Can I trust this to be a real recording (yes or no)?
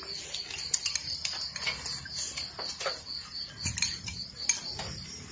yes